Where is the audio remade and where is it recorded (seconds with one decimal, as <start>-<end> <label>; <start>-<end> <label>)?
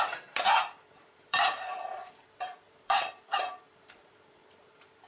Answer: 0.0-5.1 remade